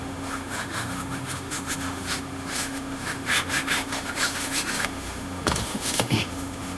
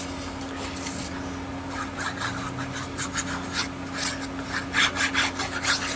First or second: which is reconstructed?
first